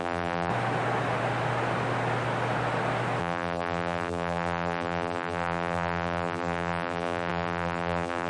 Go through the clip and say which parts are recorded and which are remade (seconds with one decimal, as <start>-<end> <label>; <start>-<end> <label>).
0.0-0.5 remade; 0.5-3.2 recorded; 3.2-8.3 remade

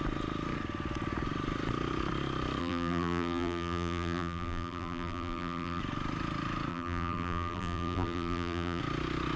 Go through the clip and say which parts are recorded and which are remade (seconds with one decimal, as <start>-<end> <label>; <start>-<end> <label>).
0.0-2.6 recorded; 2.6-5.8 remade; 5.8-6.7 recorded; 6.7-8.8 remade; 8.8-9.4 recorded

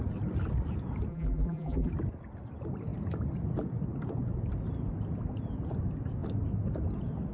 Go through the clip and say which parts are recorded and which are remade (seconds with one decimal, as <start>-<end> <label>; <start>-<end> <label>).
0.0-1.1 recorded; 1.1-1.9 remade; 1.9-7.3 recorded

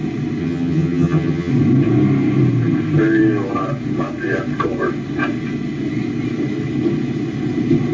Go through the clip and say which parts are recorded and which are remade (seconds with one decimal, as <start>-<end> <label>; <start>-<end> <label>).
0.0-0.4 recorded; 0.4-1.5 remade; 1.5-7.9 recorded

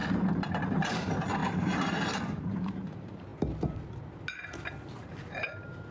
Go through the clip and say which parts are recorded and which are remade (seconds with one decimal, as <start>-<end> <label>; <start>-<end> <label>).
0.0-0.5 recorded; 0.5-3.3 remade; 3.3-5.9 recorded

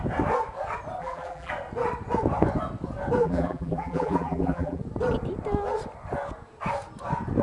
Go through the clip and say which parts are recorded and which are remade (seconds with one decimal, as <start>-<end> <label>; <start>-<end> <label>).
0.0-1.0 recorded; 1.0-1.5 remade; 1.5-3.2 recorded; 3.2-4.8 remade; 4.8-7.4 recorded

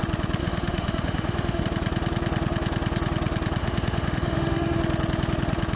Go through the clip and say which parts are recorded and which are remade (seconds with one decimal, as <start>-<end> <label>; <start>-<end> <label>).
0.0-0.4 recorded; 0.4-1.6 remade; 1.6-3.6 recorded; 3.6-4.8 remade; 4.8-5.8 recorded